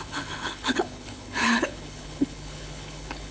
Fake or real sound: fake